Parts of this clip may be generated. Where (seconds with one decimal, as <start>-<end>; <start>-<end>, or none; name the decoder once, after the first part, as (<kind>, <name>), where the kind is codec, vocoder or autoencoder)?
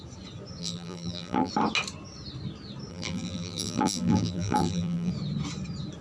0.6-1.5 (vocoder, BigVGAN v2); 2.9-5.1